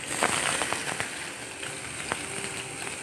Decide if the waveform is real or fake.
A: real